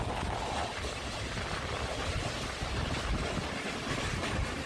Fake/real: real